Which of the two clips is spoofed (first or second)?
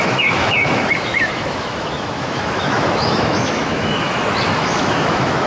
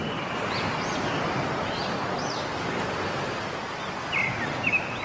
first